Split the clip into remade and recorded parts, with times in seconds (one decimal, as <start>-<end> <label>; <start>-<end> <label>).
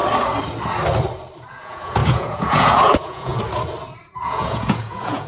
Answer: 0.0-1.5 recorded; 1.5-3.3 remade; 3.3-4.0 recorded; 4.0-5.3 remade